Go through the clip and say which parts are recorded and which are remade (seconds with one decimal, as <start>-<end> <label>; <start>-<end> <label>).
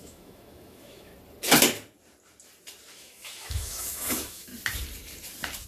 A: 0.0-1.1 remade; 1.1-2.9 recorded; 2.9-4.5 remade; 4.5-5.7 recorded